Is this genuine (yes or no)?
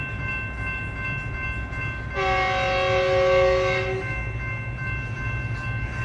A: yes